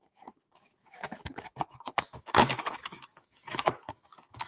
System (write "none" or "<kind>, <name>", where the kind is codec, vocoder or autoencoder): autoencoder, DAC-VAE